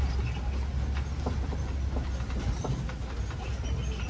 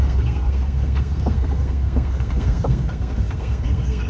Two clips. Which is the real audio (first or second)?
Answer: first